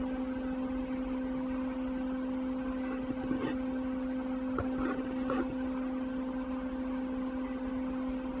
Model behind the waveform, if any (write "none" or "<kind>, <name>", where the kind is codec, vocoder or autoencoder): none